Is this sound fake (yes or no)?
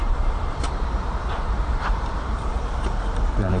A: yes